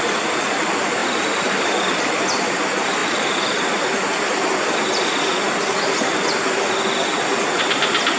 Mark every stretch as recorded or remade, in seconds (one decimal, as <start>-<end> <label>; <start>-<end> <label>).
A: 0.0-1.0 recorded; 1.0-2.0 remade; 2.0-8.2 recorded